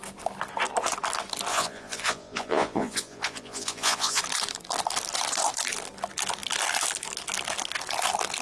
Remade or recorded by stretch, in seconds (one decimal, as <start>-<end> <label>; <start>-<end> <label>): 0.0-1.5 recorded; 1.5-4.2 remade; 4.2-8.4 recorded